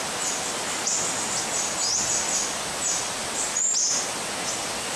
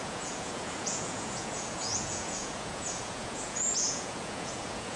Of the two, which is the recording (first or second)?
first